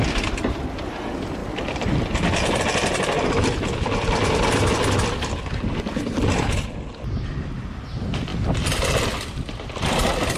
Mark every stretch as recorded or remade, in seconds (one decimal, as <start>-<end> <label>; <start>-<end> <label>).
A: 0.0-10.4 recorded